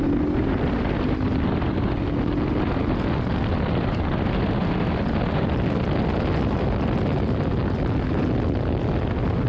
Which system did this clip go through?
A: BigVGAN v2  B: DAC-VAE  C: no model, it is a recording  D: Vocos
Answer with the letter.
C